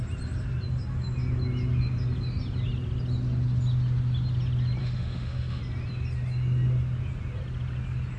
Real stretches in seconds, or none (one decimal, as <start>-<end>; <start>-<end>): 0.0-4.8; 5.6-8.2